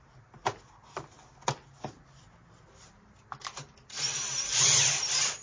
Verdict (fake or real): real